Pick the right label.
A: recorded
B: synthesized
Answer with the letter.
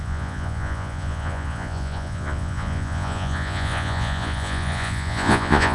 B